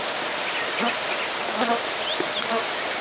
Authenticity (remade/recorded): recorded